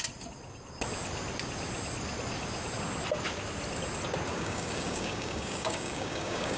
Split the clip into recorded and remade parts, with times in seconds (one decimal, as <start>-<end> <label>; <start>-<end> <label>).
0.0-4.3 recorded; 4.3-6.6 remade